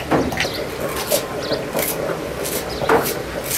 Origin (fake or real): real